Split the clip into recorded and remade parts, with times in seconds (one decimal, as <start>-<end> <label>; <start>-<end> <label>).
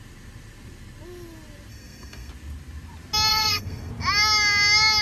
0.0-1.7 recorded; 1.7-2.3 remade; 2.3-3.3 recorded; 3.3-3.9 remade; 3.9-5.0 recorded